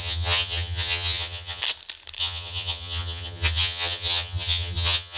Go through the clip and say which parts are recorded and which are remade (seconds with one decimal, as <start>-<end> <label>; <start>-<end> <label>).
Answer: 0.0-1.6 remade; 1.6-2.2 recorded; 2.2-5.2 remade